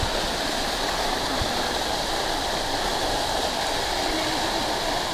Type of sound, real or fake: fake